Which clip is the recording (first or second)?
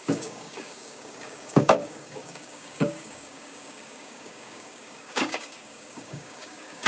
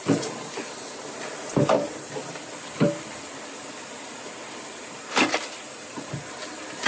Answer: second